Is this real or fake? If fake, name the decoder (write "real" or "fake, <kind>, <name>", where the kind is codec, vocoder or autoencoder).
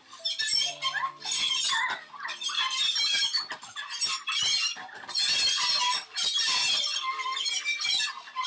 real